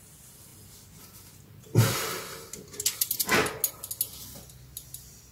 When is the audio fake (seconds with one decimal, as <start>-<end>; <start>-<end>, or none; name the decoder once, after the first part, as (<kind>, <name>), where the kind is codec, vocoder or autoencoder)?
none